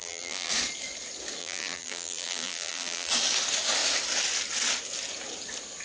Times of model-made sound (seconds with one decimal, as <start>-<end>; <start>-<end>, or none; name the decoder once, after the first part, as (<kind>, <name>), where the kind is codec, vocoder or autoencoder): 0.0-0.5 (vocoder, BigVGAN v2); 1.4-3.1